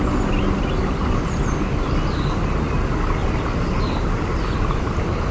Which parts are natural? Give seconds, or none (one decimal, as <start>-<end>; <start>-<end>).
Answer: 0.0-5.3